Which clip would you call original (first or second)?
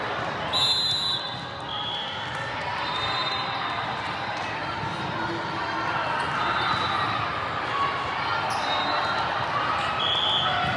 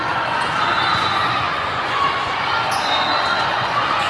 first